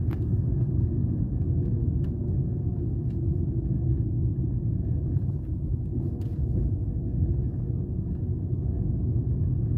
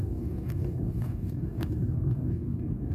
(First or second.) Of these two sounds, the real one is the first